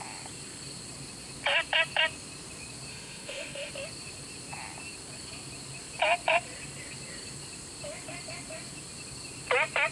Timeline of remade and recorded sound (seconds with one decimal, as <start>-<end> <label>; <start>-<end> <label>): 0.0-2.9 recorded; 2.9-3.7 remade; 3.7-9.9 recorded